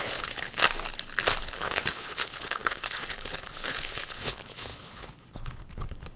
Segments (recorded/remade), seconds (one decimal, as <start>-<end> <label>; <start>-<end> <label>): 0.0-0.6 remade; 0.6-1.4 recorded; 1.4-6.2 remade